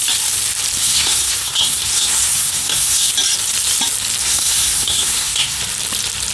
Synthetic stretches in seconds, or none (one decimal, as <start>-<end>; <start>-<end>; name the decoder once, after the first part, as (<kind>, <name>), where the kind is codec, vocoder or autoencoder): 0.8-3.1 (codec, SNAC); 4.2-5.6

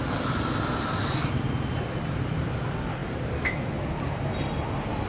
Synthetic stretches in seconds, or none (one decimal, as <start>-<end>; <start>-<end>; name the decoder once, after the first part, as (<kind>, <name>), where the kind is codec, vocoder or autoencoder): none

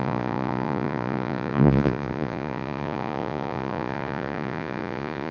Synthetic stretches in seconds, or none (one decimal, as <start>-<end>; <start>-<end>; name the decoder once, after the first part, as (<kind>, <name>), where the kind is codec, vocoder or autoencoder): 0.0-5.3 (vocoder, Vocos)